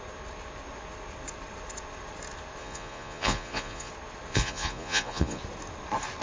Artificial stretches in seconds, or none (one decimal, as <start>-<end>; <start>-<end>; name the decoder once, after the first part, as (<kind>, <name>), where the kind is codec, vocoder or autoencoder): 2.6-3.9 (vocoder, Vocos); 4.3-5.4